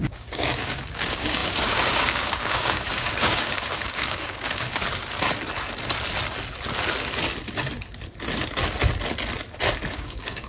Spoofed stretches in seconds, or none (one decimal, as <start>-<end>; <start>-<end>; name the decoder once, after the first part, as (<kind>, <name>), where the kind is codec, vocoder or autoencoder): 0.0-4.8 (codec, DAC); 9.9-10.5